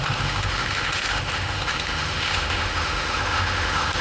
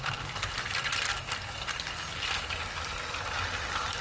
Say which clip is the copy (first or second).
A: first